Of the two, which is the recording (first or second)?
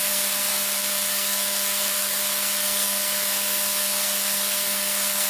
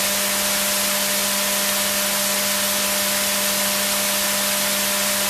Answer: second